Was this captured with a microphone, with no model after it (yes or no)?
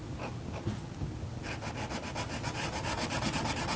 yes